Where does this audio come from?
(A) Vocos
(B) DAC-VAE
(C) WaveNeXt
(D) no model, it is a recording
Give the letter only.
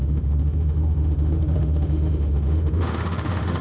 B